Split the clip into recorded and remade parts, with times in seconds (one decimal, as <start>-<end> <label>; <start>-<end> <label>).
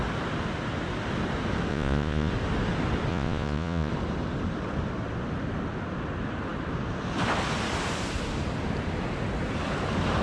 0.0-1.7 recorded; 1.7-2.3 remade; 2.3-3.1 recorded; 3.1-3.9 remade; 3.9-10.2 recorded